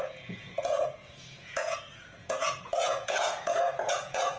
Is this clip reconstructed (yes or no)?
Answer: yes